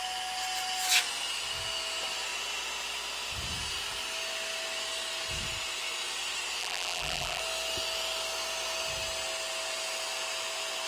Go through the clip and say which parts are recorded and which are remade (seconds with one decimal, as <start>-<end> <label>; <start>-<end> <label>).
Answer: 0.0-6.6 recorded; 6.6-7.4 remade; 7.4-10.9 recorded